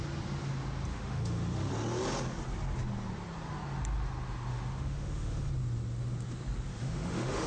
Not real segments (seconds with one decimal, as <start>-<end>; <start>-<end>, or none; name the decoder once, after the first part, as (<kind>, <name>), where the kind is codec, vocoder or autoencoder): 0.9-1.7 (autoencoder, DAC-VAE); 4.5-5.5; 6.7-7.5